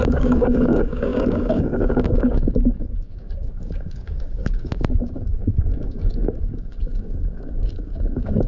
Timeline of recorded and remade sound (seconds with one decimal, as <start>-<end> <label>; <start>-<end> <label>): 0.0-8.5 remade